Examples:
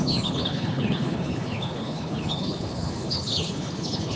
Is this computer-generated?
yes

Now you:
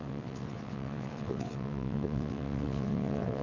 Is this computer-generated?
yes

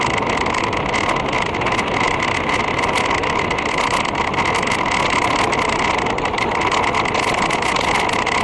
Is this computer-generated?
no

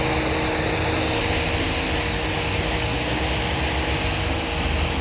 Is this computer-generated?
no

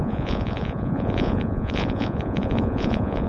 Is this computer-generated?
yes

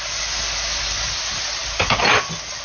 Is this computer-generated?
no